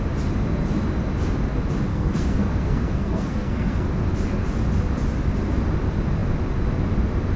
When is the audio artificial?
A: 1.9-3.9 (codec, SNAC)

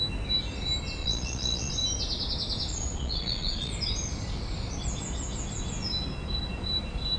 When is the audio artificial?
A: 1.0-1.7 (vocoder, Vocos); 2.7-3.7

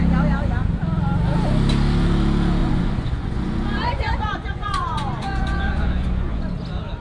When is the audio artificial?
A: 2.6-6.5 (vocoder, Vocos)

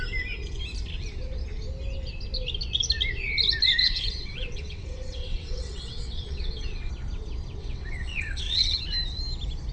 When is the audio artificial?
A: 3.8-6.9 (vocoder, WaveNeXt); 7.6-8.8

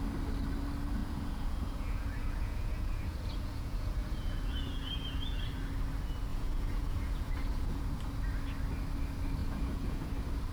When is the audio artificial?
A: 1.0-5.4 (vocoder, Vocos); 6.3-7.8; 9.4-10.1

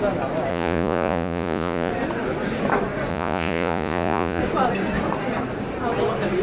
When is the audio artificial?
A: 0.5-1.9 (vocoder, Vocos); 3.1-4.4

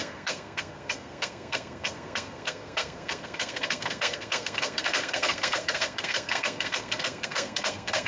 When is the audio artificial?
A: 0.0-8.1 (codec, SNAC)

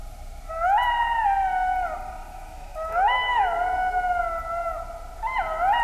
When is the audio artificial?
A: 2.3-3.5 (autoencoder, DAC-VAE)